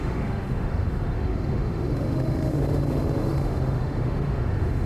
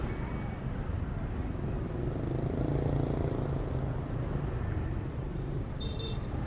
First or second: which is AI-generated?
first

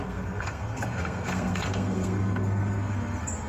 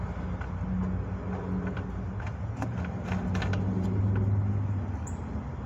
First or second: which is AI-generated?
first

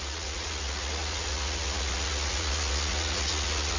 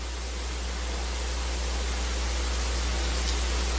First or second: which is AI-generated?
first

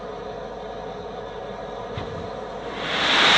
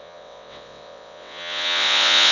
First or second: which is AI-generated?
second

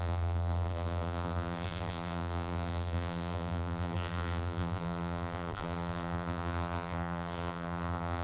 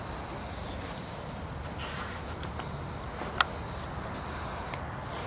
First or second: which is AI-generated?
first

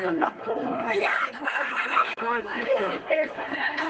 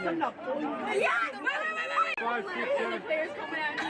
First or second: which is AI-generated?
first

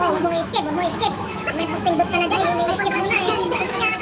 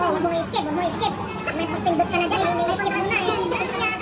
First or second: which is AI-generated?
first